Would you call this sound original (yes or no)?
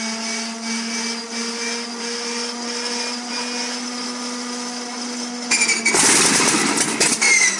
yes